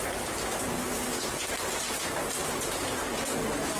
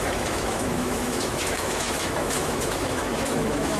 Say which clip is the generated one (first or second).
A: second